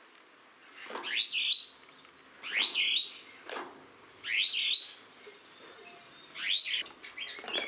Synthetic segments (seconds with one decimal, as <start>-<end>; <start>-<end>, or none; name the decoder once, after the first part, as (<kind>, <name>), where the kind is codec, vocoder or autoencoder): none